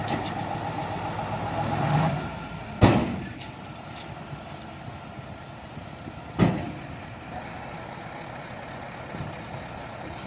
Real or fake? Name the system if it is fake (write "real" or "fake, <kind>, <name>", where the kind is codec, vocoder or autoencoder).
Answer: real